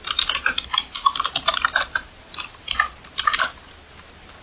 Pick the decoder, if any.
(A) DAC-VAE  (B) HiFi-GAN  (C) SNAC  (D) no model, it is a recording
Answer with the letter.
D